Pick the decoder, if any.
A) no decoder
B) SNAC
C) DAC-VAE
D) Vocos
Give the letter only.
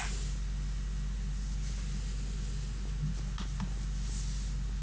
A